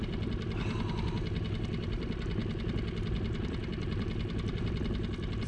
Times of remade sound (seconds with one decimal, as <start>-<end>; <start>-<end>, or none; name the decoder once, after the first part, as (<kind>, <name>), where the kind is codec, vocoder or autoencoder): none